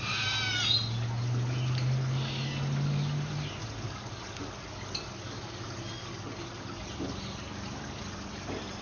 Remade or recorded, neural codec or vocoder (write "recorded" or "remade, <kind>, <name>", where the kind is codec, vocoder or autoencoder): recorded